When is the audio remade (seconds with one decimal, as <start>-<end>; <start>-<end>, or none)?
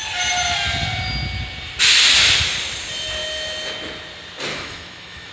4.5-5.3